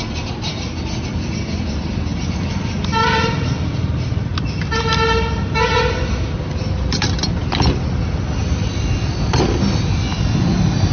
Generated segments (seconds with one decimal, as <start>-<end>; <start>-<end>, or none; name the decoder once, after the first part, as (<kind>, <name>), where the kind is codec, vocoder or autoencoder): none